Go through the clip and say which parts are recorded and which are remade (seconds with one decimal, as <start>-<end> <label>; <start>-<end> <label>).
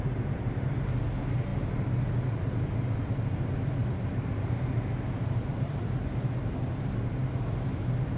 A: 0.0-3.8 recorded; 3.8-6.3 remade; 6.3-8.2 recorded